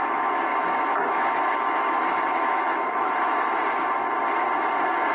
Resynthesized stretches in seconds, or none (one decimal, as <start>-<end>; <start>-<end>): 0.5-3.6